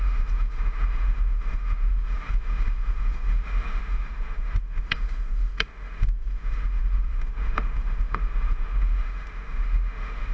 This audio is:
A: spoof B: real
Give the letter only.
A